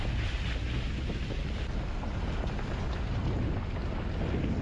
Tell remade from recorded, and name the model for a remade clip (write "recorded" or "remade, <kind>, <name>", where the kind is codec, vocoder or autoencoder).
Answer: recorded